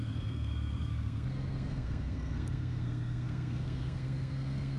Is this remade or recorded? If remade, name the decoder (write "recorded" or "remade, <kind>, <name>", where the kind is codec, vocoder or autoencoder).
remade, codec, SNAC